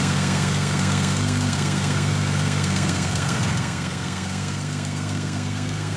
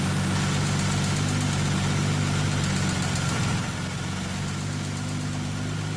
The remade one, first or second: first